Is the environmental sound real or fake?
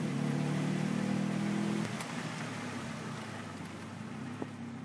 real